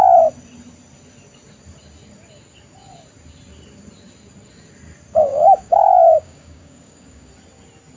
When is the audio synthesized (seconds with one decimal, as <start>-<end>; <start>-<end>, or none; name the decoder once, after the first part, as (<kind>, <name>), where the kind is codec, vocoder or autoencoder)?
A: 5.1-7.3 (codec, DAC)